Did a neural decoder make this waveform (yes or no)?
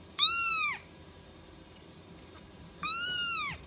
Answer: yes